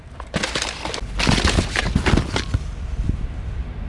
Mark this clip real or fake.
real